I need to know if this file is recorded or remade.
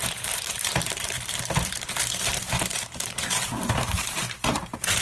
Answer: remade